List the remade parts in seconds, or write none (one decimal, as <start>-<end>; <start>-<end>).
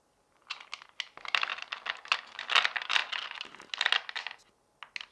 none